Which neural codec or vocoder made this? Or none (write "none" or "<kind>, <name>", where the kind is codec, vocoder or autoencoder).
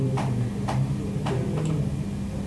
none